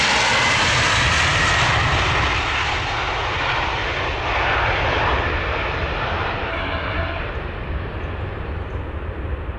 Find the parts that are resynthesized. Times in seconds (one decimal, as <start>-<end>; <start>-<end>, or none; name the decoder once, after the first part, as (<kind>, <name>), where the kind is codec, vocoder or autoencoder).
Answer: 6.5-7.2 (codec, SNAC)

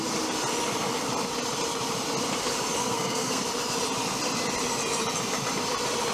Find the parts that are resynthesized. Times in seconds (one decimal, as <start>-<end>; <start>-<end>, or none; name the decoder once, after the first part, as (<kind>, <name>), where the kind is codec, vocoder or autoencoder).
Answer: 2.8-3.4 (codec, SNAC)

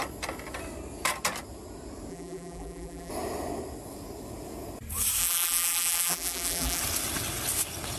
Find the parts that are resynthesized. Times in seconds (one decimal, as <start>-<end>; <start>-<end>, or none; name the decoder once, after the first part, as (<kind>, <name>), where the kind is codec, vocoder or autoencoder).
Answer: 2.1-3.1 (vocoder, BigVGAN v2); 5.2-6.8